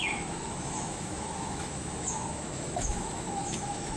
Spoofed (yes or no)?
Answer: yes